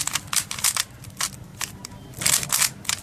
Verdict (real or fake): real